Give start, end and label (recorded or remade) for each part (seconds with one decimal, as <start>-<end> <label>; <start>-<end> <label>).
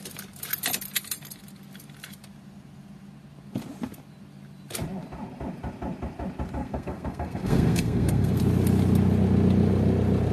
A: 0.0-6.6 recorded; 6.6-8.4 remade; 8.4-10.3 recorded